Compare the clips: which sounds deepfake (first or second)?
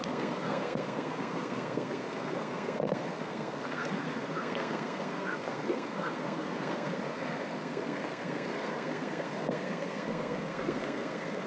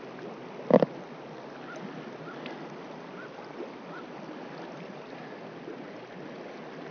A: first